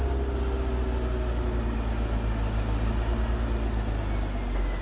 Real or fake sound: real